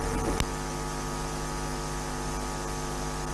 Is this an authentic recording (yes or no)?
yes